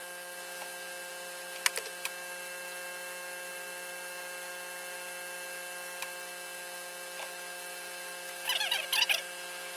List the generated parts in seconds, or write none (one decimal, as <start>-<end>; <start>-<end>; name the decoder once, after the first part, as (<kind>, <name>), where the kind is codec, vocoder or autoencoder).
none